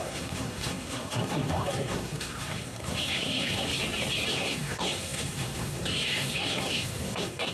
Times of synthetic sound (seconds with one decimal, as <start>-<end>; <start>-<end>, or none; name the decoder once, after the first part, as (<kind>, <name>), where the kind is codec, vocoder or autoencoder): 0.0-3.7 (codec, SNAC); 4.3-7.5